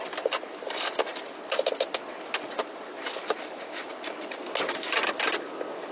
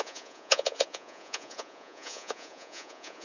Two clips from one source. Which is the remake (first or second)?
second